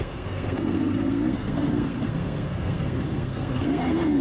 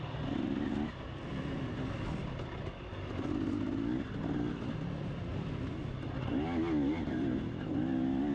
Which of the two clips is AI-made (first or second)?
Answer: first